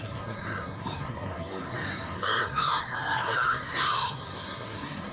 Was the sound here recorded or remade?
remade